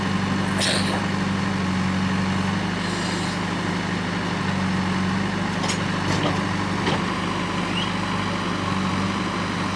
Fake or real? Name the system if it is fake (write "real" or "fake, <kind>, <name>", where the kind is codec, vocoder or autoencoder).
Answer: real